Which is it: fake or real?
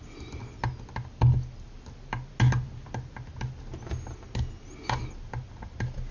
real